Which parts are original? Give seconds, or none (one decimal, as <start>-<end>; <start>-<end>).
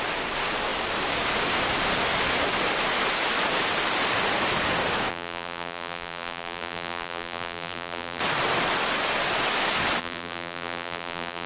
0.0-5.1; 8.2-10.0